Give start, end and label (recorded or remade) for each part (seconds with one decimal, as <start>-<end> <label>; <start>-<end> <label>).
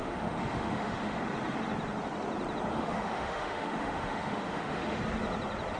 0.0-1.2 remade; 1.2-2.7 recorded; 2.7-5.0 remade; 5.0-5.8 recorded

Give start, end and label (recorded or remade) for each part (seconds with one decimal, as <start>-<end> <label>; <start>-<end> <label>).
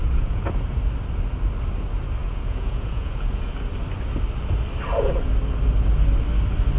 0.0-0.7 remade; 0.7-2.2 recorded; 2.2-3.7 remade; 3.7-6.8 recorded